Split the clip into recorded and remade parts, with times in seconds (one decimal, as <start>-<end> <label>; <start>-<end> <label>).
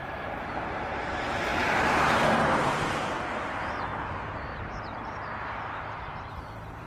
0.0-3.9 remade; 3.9-4.6 recorded; 4.6-6.9 remade